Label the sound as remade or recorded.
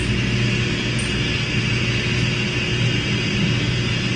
recorded